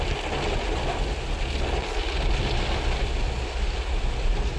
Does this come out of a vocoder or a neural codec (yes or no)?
no